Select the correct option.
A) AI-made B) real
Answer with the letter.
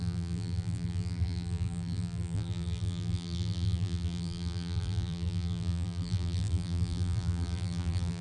A